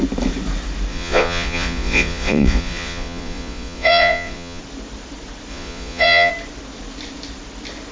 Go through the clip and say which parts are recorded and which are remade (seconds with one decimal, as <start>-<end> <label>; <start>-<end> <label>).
0.0-0.9 recorded; 0.9-4.6 remade; 4.6-5.5 recorded; 5.5-6.3 remade; 6.3-7.9 recorded